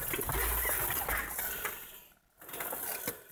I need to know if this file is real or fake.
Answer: real